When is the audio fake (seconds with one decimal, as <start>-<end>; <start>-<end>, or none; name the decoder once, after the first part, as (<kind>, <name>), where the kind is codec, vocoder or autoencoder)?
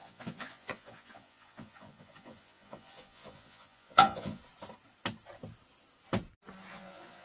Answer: 0.0-4.4 (vocoder, Vocos); 6.7-7.2